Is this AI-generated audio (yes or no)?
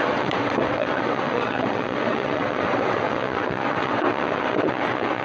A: yes